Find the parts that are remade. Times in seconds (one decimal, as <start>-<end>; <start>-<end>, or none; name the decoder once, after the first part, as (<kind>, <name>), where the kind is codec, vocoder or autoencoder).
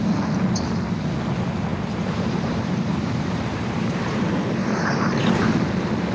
1.7-5.4 (vocoder, BigVGAN v2)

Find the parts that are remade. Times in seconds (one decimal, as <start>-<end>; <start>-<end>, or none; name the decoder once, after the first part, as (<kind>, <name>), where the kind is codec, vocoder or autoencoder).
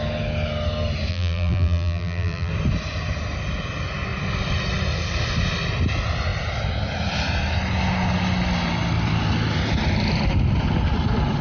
1.1-2.5 (vocoder, BigVGAN v2)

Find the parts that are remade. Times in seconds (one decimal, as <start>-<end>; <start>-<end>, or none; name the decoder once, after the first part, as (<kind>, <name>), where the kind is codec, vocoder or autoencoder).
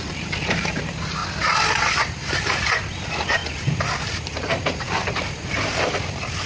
0.0-1.2 (vocoder, BigVGAN v2); 1.9-3.4; 4.2-6.5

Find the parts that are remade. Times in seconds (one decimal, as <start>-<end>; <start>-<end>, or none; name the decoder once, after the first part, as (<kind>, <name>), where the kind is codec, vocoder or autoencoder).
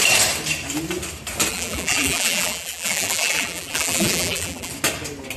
1.5-4.7 (vocoder, BigVGAN v2)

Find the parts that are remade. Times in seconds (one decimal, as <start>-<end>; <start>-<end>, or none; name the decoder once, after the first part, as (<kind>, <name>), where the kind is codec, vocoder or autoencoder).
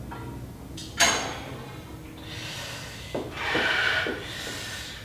none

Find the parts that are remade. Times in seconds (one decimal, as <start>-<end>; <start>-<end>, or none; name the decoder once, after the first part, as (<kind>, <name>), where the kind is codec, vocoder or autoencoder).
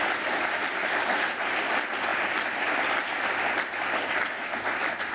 0.8-1.5 (vocoder, BigVGAN v2)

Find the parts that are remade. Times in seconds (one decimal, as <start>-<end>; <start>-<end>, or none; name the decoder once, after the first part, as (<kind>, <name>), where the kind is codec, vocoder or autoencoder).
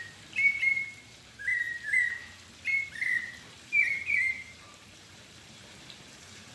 0.0-1.5 (vocoder, BigVGAN v2); 2.9-6.5